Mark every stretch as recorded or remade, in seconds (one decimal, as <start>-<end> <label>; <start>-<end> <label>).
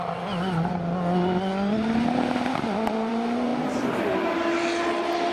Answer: 0.0-3.5 recorded; 3.5-4.1 remade; 4.1-5.3 recorded